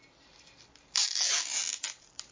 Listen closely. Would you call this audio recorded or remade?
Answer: recorded